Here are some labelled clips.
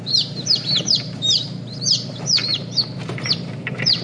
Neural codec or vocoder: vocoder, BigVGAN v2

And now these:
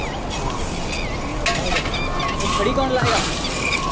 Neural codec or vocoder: none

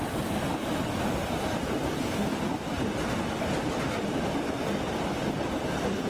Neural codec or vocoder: none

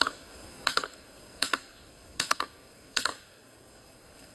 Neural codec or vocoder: codec, SNAC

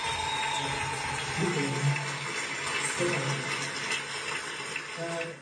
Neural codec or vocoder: none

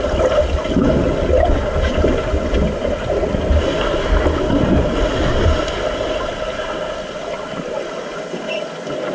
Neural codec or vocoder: none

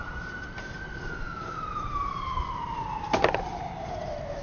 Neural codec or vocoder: vocoder, BigVGAN v2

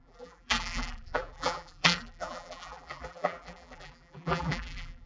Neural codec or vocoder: vocoder, BigVGAN v2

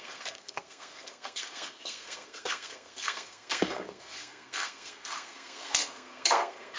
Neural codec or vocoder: codec, SNAC